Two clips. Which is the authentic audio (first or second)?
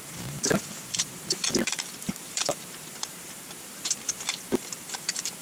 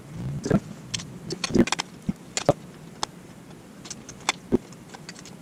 second